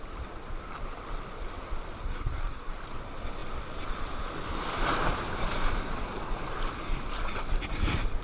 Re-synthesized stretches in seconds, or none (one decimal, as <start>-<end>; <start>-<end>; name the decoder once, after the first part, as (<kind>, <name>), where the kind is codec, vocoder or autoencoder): 2.0-2.7 (codec, SNAC)